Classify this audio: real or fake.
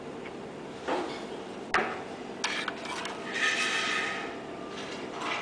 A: real